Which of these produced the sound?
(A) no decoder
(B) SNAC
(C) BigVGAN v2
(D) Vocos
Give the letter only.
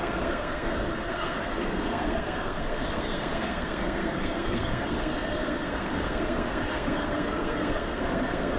B